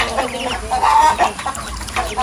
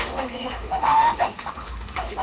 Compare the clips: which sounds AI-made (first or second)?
second